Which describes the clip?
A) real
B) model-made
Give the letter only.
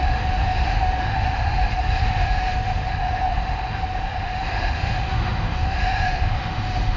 B